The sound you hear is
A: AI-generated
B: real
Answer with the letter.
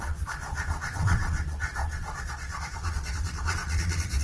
A